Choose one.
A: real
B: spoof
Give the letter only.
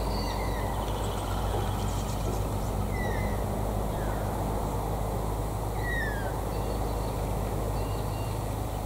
A